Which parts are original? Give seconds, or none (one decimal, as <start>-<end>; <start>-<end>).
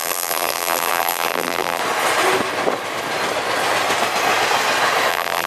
1.8-5.1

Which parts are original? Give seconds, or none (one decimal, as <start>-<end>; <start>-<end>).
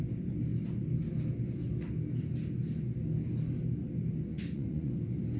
0.0-4.3; 4.9-5.4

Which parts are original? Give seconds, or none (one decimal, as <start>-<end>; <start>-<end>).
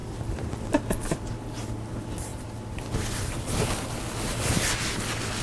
0.8-5.4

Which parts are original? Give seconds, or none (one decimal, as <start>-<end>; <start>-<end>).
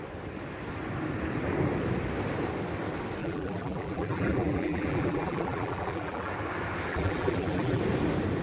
0.0-3.2; 6.3-6.9; 7.8-8.4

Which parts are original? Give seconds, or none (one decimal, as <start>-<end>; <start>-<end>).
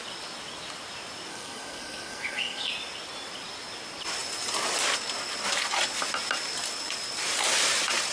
0.0-1.3; 2.7-8.1